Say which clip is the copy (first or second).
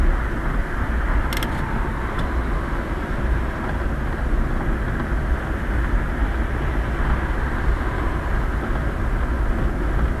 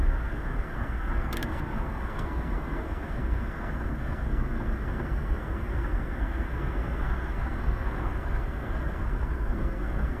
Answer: second